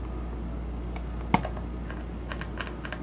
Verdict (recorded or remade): recorded